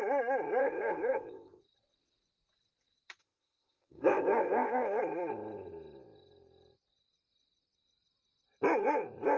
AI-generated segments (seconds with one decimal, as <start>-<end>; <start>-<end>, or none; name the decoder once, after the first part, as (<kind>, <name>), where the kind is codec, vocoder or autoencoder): 0.6-1.6 (codec, ZipCodec); 3.2-5.0